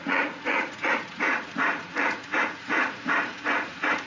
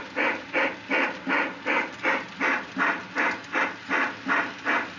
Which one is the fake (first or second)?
first